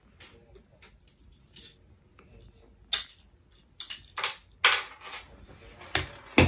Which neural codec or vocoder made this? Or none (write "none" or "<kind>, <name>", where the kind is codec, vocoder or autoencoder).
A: none